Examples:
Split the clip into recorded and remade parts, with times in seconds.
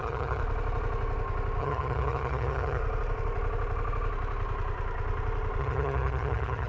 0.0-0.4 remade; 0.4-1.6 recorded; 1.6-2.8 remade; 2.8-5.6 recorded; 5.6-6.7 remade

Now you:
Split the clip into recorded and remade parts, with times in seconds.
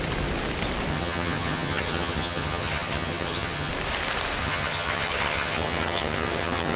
0.0-0.9 recorded; 0.9-3.7 remade; 3.7-4.4 recorded; 4.4-6.8 remade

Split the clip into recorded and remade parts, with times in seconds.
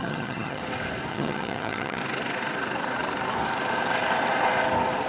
0.0-0.6 remade; 0.6-1.1 recorded; 1.1-2.0 remade; 2.0-5.1 recorded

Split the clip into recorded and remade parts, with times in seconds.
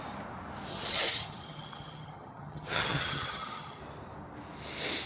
0.0-0.7 recorded; 0.7-3.8 remade; 3.8-5.1 recorded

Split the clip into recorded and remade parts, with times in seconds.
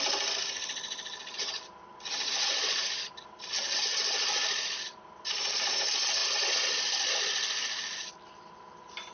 0.0-9.1 recorded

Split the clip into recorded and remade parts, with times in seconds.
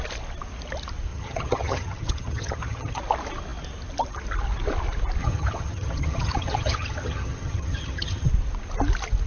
0.0-1.1 recorded; 1.1-3.0 remade; 3.0-5.2 recorded; 5.2-8.3 remade; 8.3-9.3 recorded